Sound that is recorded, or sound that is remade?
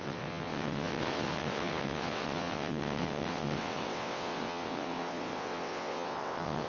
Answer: remade